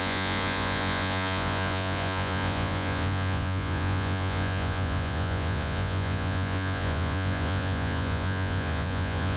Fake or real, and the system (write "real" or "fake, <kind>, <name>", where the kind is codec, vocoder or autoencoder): fake, vocoder, Vocos